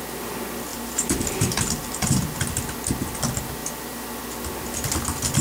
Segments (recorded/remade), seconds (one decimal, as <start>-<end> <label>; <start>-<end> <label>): 0.0-0.7 recorded; 0.7-2.6 remade; 2.6-5.4 recorded